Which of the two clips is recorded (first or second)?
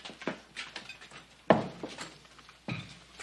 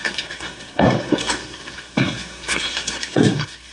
first